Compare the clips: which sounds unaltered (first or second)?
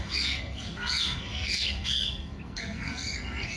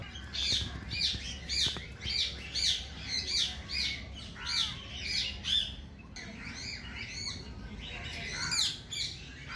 second